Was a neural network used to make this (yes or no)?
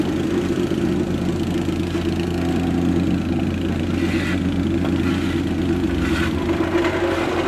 no